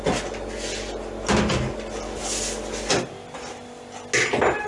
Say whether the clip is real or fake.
real